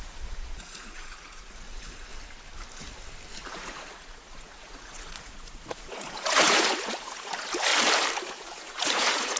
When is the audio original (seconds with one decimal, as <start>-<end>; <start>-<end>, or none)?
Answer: 2.1-3.4; 7.7-8.2